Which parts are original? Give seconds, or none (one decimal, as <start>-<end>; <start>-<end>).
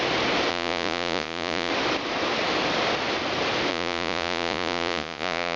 0.0-0.5; 1.7-3.7